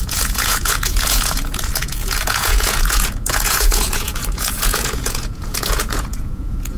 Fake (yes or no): yes